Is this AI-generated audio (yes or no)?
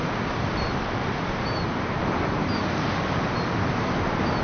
no